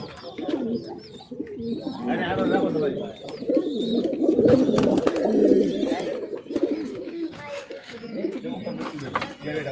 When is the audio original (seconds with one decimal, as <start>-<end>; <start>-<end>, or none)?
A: 0.0-6.9; 8.4-9.7